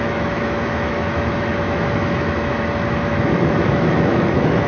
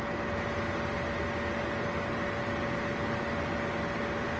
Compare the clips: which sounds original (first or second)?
second